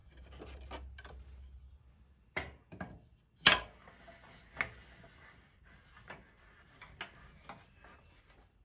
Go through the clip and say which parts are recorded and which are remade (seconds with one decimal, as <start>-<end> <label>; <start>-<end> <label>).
0.0-8.6 recorded